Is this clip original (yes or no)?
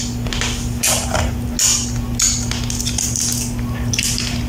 yes